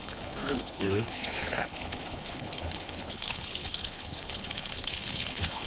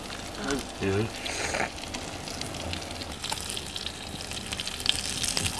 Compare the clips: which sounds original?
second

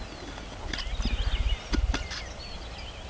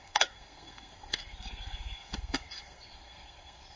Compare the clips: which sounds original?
first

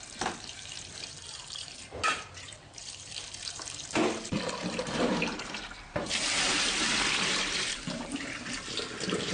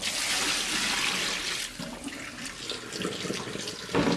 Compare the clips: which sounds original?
second